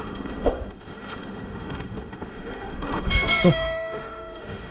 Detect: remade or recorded remade